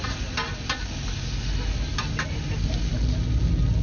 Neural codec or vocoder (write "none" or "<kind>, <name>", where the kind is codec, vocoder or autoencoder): none